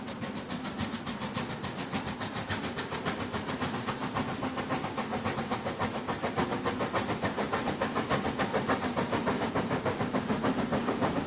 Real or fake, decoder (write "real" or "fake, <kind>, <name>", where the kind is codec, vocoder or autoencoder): real